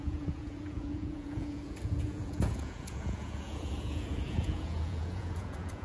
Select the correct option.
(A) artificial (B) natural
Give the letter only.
A